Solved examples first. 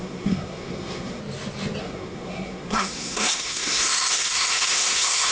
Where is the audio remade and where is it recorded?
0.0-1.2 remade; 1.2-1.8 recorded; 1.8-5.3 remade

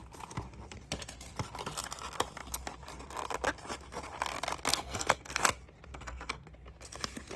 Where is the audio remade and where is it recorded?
0.0-4.7 recorded; 4.7-5.4 remade; 5.4-5.9 recorded; 5.9-6.5 remade; 6.5-7.4 recorded

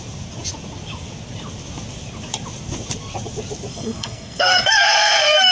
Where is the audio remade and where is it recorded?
0.0-3.7 recorded; 3.7-5.5 remade